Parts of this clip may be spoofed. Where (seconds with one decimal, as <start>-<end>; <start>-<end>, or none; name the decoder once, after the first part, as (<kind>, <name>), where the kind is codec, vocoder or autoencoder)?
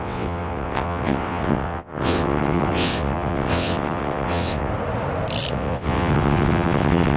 0.0-4.7 (vocoder, WaveNeXt); 5.5-7.2